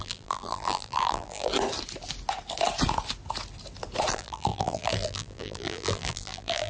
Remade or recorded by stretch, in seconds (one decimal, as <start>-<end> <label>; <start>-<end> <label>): 0.0-1.5 remade; 1.5-4.1 recorded; 4.1-6.7 remade